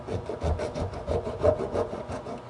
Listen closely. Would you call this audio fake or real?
fake